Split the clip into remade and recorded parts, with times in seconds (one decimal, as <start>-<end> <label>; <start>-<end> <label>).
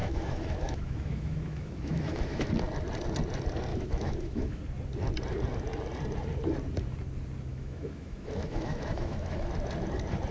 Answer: 0.0-2.5 remade; 2.5-3.7 recorded; 3.7-4.6 remade; 4.6-7.5 recorded; 7.5-9.5 remade; 9.5-10.3 recorded